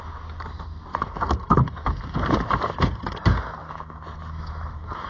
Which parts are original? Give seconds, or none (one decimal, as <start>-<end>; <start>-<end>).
0.0-0.9; 2.2-3.6